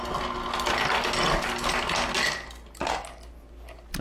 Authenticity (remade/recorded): recorded